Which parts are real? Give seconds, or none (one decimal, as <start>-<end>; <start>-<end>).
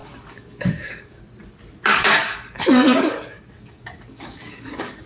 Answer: 1.2-1.9